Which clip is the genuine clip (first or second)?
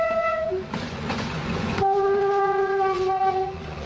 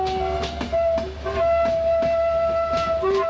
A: second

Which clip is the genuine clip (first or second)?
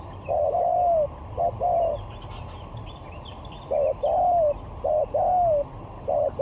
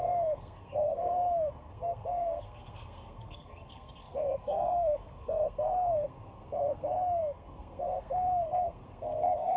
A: first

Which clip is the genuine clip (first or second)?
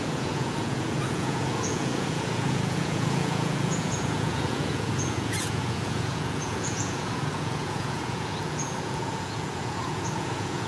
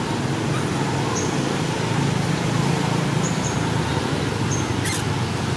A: second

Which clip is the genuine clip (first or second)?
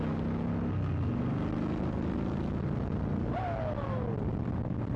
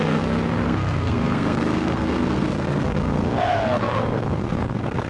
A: first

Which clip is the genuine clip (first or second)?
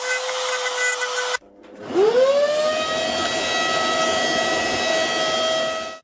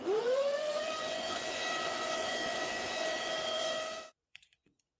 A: first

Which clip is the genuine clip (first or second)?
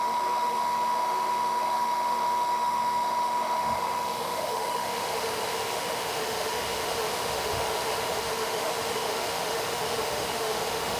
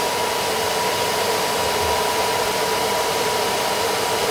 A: second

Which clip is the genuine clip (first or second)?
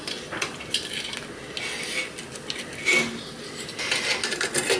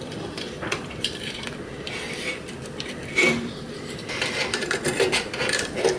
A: first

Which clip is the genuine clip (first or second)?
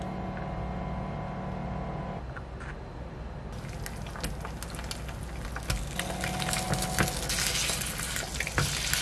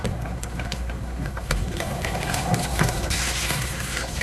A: first